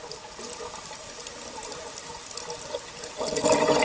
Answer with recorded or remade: recorded